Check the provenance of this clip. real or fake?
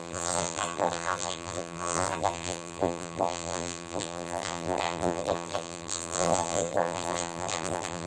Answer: fake